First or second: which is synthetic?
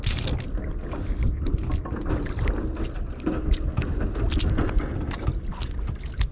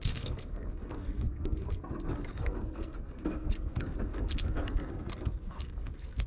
second